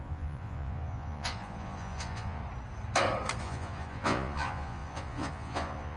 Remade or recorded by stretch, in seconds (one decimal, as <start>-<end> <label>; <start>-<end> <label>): 0.0-2.4 remade; 2.4-3.4 recorded; 3.4-6.0 remade